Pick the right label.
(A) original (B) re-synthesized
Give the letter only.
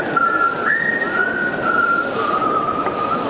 A